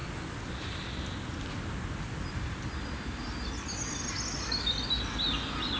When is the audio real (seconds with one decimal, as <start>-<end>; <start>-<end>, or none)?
0.0-5.8